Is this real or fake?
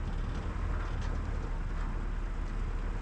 real